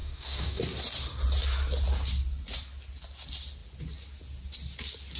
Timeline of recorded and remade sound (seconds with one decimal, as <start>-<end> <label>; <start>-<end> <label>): 0.0-0.6 remade; 0.6-5.2 recorded